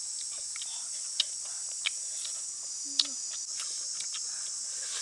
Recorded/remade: recorded